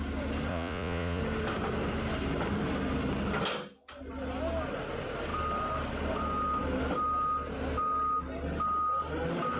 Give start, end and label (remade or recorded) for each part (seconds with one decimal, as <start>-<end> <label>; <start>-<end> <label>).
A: 0.0-0.5 recorded; 0.5-1.2 remade; 1.2-9.6 recorded